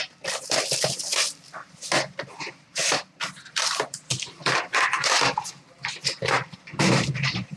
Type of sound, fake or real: fake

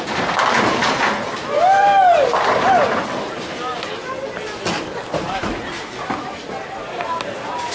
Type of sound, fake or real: real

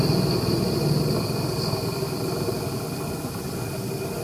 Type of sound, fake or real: real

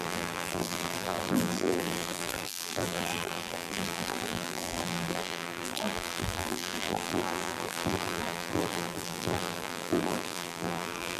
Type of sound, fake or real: fake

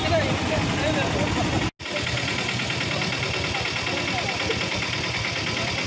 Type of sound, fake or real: real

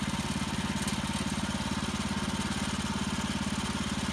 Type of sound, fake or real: real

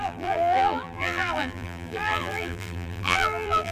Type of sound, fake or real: fake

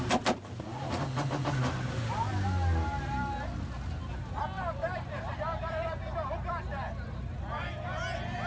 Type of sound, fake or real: real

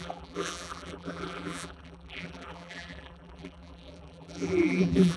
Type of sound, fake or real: fake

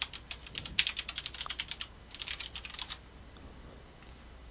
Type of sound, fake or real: real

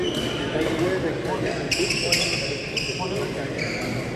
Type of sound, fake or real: real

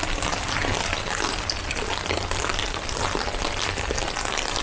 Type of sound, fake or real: real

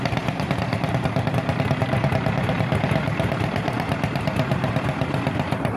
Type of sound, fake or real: fake